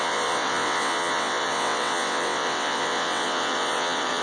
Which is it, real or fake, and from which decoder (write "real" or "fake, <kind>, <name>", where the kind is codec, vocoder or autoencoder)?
fake, vocoder, WaveNeXt